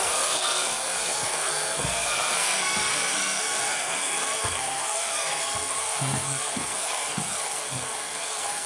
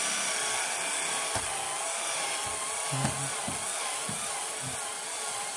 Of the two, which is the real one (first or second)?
second